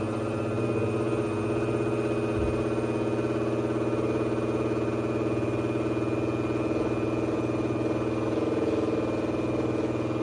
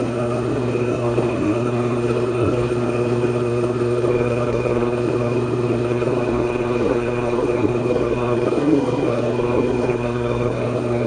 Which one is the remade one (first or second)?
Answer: second